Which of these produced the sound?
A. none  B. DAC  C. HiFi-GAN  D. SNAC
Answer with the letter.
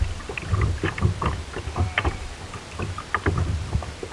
A